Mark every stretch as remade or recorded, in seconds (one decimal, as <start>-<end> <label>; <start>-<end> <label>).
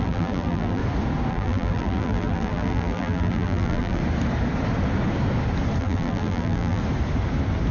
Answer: 0.0-0.8 remade; 0.8-1.3 recorded; 1.3-4.0 remade; 4.0-5.8 recorded; 5.8-6.8 remade; 6.8-7.7 recorded